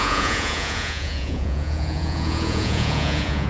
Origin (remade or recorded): remade